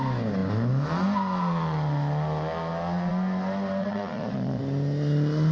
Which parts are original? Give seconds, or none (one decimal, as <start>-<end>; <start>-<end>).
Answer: 0.0-3.8; 4.6-5.5